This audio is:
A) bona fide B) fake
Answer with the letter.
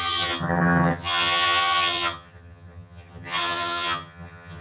B